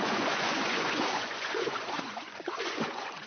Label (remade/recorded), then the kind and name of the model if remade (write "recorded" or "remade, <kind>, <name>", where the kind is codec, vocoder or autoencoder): remade, vocoder, Vocos